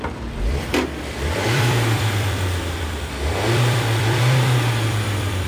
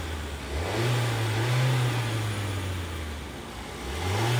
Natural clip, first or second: second